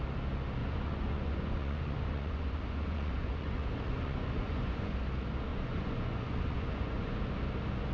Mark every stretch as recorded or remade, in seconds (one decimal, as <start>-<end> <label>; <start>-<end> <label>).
0.0-0.6 recorded; 0.6-4.9 remade; 4.9-5.5 recorded; 5.5-7.2 remade; 7.2-7.9 recorded